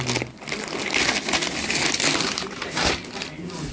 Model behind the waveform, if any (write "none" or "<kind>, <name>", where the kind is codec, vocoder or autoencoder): none